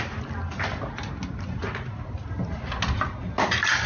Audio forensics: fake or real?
real